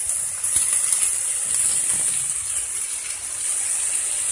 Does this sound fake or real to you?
real